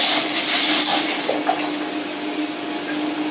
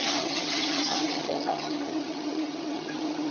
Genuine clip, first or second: first